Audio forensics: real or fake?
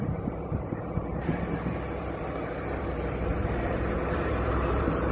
fake